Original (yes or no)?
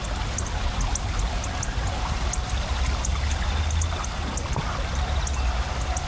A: yes